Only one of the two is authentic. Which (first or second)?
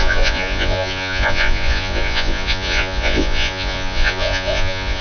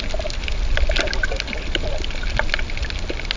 second